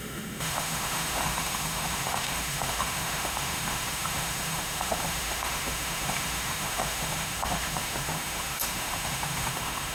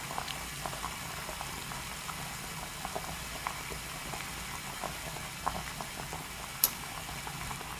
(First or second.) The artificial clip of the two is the first